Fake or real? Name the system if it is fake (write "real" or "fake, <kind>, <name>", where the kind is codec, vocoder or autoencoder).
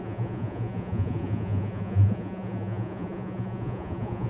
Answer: fake, vocoder, Vocos